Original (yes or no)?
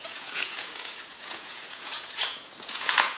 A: no